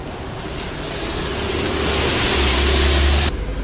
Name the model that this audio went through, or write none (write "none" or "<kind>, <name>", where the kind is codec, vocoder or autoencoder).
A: none